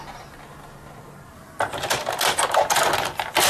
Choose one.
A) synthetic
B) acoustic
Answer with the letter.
B